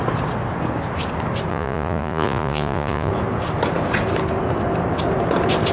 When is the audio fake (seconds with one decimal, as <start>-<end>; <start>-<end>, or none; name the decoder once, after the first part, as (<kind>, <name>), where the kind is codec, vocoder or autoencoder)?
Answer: 1.5-3.1 (vocoder, Vocos)